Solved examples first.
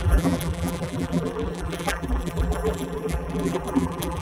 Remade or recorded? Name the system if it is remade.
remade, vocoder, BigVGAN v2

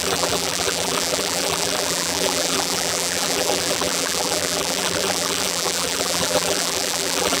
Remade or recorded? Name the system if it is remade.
remade, vocoder, BigVGAN v2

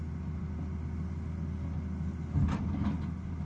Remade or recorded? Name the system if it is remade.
recorded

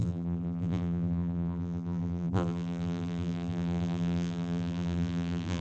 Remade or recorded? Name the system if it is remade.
remade, vocoder, BigVGAN v2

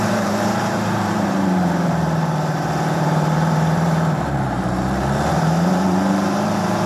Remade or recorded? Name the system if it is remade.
remade, vocoder, BigVGAN v2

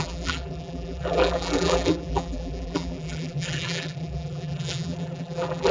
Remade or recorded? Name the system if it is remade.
remade, vocoder, BigVGAN v2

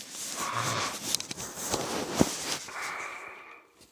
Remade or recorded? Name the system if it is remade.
remade, vocoder, BigVGAN v2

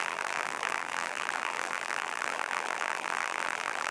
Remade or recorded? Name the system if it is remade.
remade, vocoder, BigVGAN v2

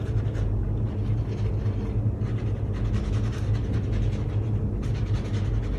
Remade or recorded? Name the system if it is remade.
recorded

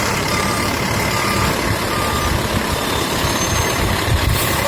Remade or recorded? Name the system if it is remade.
remade, vocoder, BigVGAN v2